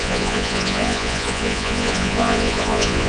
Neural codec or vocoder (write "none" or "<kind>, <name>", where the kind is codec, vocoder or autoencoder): vocoder, Vocos